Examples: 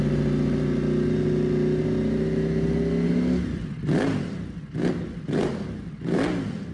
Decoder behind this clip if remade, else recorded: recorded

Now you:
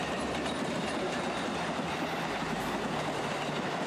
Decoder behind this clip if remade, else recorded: recorded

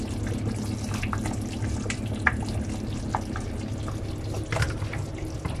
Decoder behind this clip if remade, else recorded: recorded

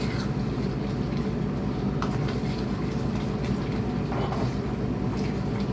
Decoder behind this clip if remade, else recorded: recorded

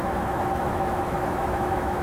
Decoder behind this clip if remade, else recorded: remade, autoencoder, DAC-VAE